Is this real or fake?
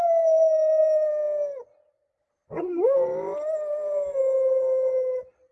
real